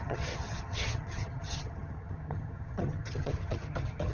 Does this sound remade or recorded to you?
remade